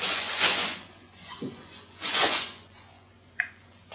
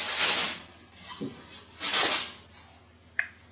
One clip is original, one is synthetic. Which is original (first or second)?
second